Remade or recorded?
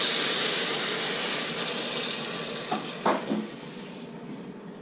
recorded